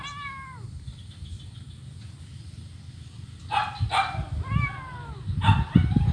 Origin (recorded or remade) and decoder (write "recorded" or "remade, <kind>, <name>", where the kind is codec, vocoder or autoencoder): recorded